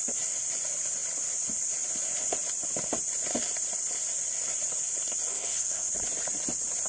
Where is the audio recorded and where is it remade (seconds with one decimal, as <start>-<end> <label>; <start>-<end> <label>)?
0.0-5.3 recorded; 5.3-5.9 remade; 5.9-6.9 recorded